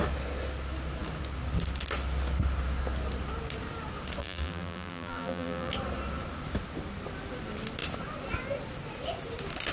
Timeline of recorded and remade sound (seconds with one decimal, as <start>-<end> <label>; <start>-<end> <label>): 0.0-4.2 recorded; 4.2-5.7 remade; 5.7-9.7 recorded